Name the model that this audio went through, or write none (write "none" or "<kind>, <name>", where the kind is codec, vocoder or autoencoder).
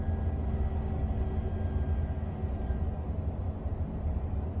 none